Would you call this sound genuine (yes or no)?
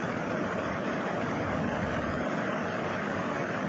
no